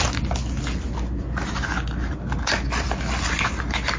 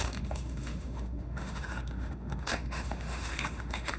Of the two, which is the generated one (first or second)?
second